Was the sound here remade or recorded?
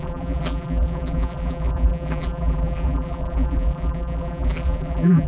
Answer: remade